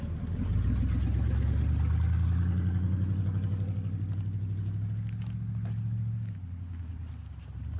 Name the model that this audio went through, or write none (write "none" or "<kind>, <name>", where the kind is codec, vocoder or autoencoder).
none